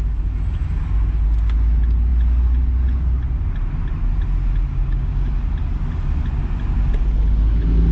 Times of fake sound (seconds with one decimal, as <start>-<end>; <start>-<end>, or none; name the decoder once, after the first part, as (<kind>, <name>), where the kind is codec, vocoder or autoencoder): 4.7-5.3 (codec, DAC)